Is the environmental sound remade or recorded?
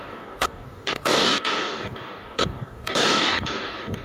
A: remade